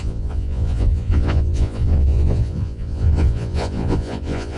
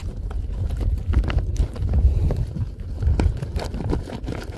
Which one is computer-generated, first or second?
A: first